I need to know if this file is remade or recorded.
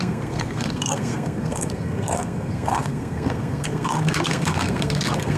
remade